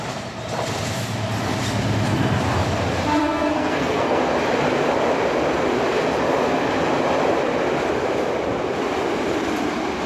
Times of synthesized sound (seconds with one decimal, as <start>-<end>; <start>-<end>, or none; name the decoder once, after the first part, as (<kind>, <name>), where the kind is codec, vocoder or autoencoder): 3.2-4.2 (codec, SNAC)